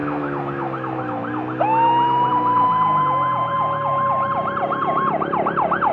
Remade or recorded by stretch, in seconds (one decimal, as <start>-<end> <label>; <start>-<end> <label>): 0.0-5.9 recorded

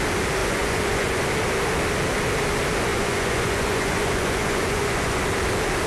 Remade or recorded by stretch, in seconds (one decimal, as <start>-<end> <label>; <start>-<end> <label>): 0.0-0.4 recorded; 0.4-1.2 remade; 1.2-2.9 recorded; 2.9-5.2 remade; 5.2-5.9 recorded

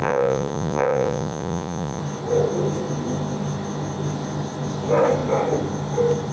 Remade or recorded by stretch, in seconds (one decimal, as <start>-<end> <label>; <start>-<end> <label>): 0.0-2.0 remade; 2.0-6.3 recorded

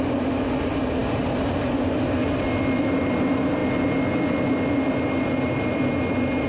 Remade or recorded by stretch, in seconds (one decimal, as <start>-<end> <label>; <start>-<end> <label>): 0.0-6.5 recorded

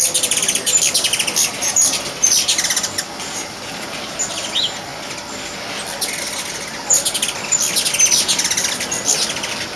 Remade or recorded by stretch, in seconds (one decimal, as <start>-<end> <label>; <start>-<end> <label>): 0.0-9.8 recorded